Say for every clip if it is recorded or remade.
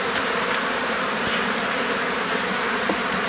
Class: remade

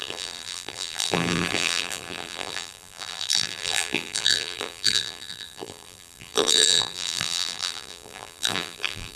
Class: remade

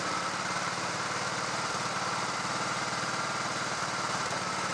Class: remade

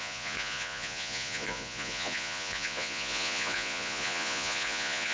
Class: remade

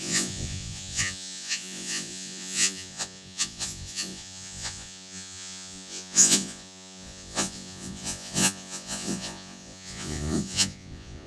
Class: remade